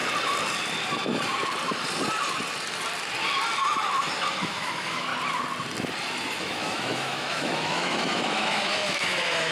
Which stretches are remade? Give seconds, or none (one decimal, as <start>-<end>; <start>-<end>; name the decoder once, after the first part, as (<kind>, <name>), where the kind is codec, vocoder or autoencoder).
4.4-5.1 (autoencoder, DAC-VAE); 6.4-9.5